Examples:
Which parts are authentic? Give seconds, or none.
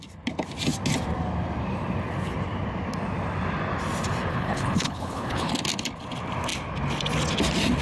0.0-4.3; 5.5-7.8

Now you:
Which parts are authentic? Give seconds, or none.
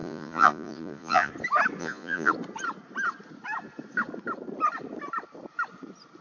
1.3-1.8; 2.3-6.2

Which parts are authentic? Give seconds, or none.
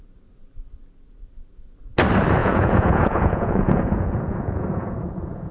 0.0-2.4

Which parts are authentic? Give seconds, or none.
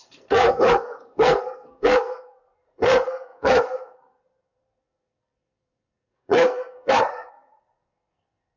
none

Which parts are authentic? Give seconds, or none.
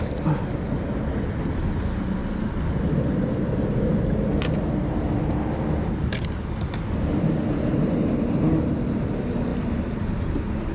0.0-10.7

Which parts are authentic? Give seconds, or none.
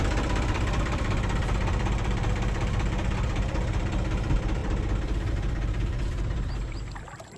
none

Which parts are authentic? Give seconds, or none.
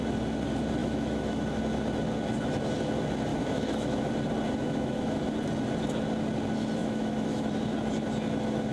0.0-0.8; 1.4-3.3; 4.1-4.6; 5.2-6.8; 7.5-8.7